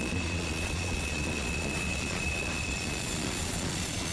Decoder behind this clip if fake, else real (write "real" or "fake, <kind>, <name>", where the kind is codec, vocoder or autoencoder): fake, vocoder, Vocos